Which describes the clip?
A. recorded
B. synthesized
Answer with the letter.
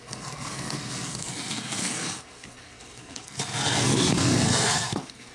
B